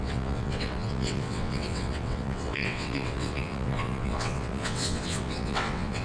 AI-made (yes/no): yes